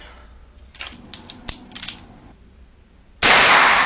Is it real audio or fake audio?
real